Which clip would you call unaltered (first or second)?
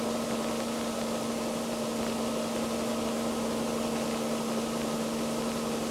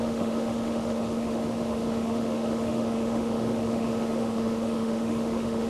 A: first